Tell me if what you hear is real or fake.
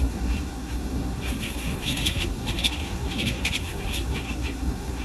fake